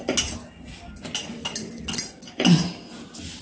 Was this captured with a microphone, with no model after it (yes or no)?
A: yes